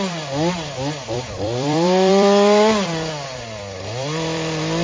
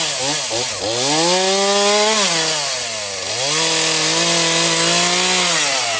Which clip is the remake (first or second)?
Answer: first